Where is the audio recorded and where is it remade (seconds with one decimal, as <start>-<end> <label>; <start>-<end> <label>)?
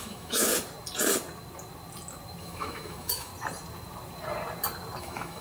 0.0-0.5 remade; 0.5-2.4 recorded; 2.4-3.3 remade; 3.3-5.0 recorded; 5.0-5.4 remade